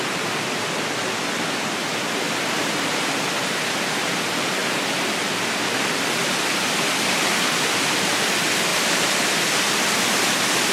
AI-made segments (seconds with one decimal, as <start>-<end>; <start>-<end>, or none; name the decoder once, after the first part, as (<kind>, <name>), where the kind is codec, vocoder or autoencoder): none